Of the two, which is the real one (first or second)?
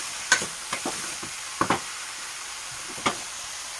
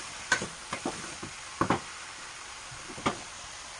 first